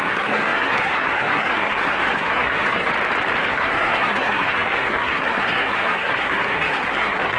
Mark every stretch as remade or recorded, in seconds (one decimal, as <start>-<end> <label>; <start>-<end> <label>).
0.0-2.9 remade; 2.9-3.5 recorded; 3.5-7.4 remade